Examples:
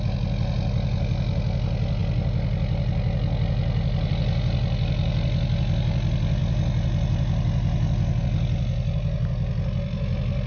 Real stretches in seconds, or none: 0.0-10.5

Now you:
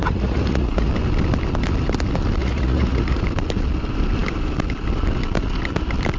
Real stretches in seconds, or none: 0.9-2.4; 3.2-6.2